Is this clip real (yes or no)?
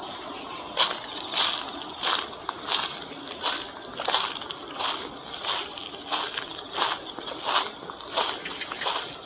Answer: yes